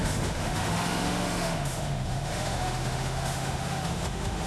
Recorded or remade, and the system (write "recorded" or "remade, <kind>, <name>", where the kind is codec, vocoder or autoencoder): remade, autoencoder, DAC-VAE